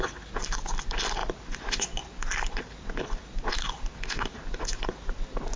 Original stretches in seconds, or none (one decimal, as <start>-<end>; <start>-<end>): 0.0-5.6